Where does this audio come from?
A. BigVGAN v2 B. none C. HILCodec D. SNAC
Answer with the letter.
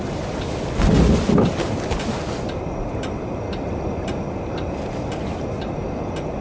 B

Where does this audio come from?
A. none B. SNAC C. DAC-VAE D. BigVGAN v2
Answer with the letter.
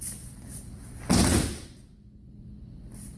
A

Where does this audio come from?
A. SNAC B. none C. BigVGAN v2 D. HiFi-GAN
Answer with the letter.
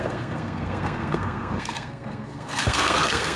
A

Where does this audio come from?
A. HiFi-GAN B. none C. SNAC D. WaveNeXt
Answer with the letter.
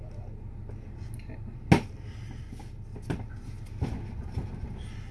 B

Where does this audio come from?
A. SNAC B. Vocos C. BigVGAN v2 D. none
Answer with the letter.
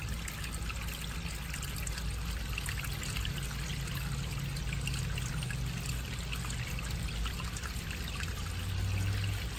D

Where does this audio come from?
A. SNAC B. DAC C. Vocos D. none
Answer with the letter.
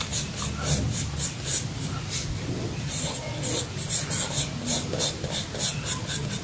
D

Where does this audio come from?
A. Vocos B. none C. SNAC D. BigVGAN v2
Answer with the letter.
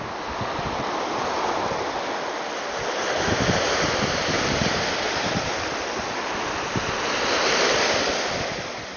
B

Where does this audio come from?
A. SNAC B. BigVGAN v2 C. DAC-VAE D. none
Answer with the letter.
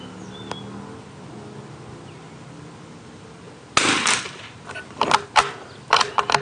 D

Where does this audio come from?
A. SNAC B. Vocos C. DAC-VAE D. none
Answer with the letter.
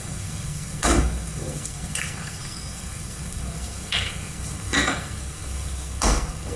A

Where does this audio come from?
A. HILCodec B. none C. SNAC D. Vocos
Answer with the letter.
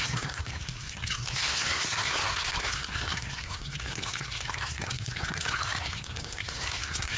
C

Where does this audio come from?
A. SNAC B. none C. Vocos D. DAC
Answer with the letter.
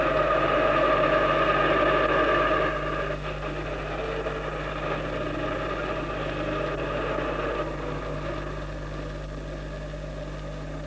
B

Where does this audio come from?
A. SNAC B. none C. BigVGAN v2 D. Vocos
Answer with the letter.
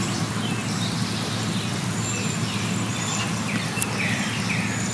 B